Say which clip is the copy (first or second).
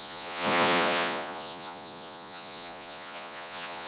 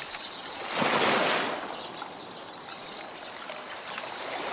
first